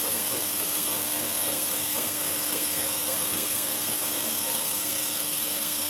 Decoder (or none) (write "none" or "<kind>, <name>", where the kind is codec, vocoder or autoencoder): codec, SNAC